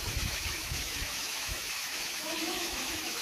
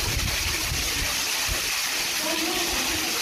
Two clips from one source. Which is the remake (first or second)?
first